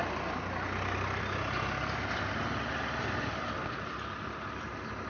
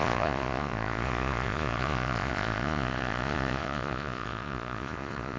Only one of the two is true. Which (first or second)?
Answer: first